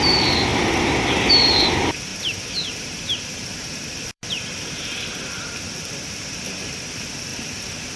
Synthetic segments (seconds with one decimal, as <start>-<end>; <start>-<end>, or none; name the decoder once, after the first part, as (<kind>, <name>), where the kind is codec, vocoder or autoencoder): 2.1-4.3 (vocoder, BigVGAN v2); 7.3-8.0